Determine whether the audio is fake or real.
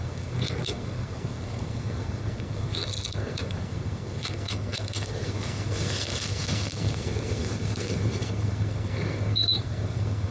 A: fake